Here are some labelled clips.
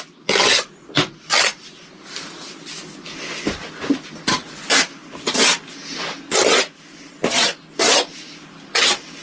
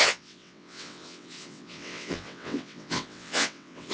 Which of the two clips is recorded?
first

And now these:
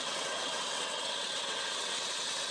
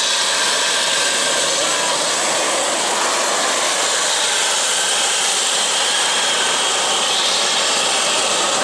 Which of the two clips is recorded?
second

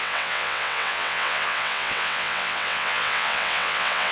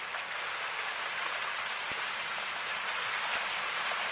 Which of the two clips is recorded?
second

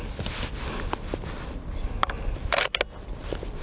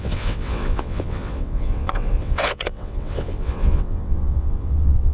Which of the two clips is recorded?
first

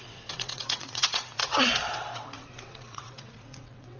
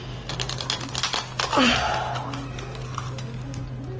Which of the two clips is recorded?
second